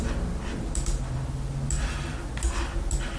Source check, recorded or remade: recorded